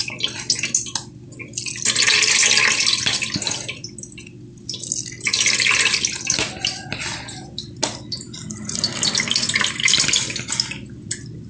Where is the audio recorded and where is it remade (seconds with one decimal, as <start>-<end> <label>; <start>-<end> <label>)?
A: 0.0-11.5 recorded

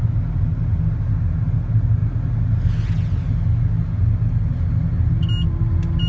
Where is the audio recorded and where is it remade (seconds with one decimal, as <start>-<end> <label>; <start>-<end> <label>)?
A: 0.0-6.1 recorded

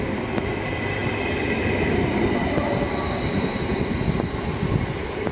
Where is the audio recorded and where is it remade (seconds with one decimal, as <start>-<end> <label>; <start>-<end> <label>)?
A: 0.0-5.3 recorded

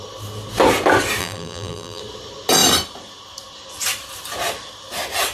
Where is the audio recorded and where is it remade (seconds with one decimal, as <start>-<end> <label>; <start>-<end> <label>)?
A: 0.0-1.2 recorded; 1.2-2.0 remade; 2.0-5.3 recorded

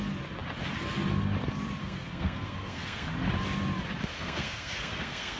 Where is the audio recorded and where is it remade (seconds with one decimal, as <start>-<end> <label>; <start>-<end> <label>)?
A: 0.0-1.8 recorded; 1.8-3.1 remade; 3.1-4.1 recorded; 4.1-5.4 remade